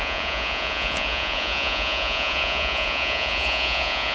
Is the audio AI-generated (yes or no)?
yes